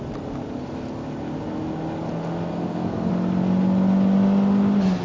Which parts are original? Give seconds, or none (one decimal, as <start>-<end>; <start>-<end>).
0.0-2.5; 3.1-5.0